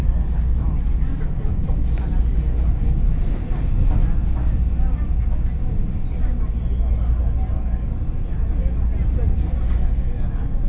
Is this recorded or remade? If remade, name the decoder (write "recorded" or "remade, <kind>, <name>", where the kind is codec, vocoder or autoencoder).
recorded